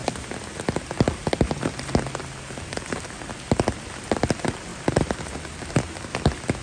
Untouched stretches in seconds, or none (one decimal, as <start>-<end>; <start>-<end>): 0.0-4.7; 5.5-6.6

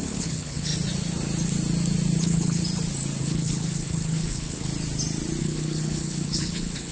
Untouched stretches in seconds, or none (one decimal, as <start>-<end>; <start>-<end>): 0.7-2.2; 2.6-3.2; 4.7-5.4

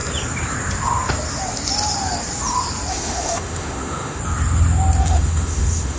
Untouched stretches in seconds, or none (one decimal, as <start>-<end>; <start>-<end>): 0.0-2.9; 4.2-5.0